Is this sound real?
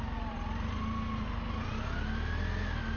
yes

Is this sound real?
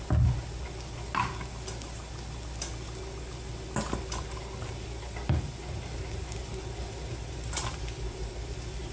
yes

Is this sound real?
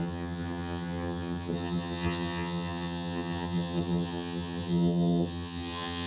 no